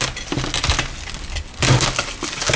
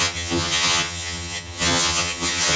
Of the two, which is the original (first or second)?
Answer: first